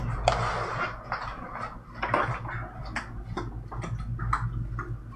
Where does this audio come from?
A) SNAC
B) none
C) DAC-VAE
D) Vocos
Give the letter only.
B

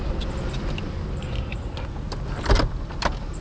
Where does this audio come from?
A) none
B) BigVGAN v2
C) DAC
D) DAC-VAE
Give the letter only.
A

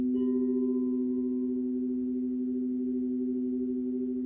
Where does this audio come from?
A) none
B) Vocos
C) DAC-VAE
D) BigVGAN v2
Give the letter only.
A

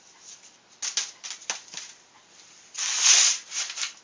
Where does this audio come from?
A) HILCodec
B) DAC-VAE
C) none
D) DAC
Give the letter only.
C